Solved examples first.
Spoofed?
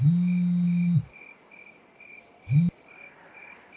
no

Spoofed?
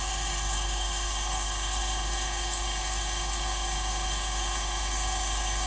yes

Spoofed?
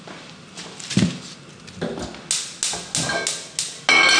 no